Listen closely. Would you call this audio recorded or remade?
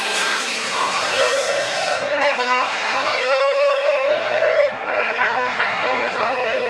remade